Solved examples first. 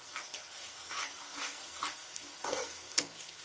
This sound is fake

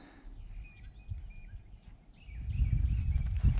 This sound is real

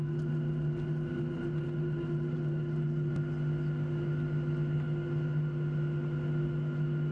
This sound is real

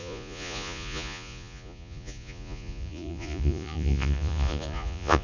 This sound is fake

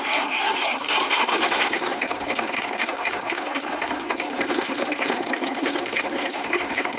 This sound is fake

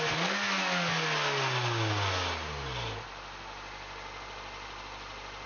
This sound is real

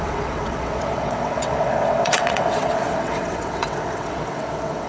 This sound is fake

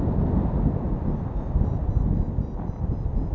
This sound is real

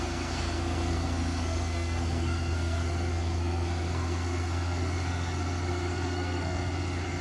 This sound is fake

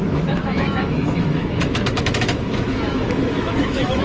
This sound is fake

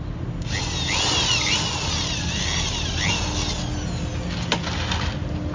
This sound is real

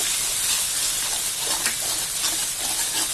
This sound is real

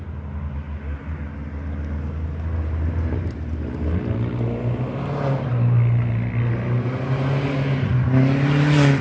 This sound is real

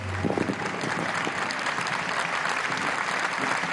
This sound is real